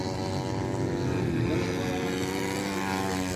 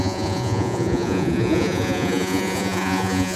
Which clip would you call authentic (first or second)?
first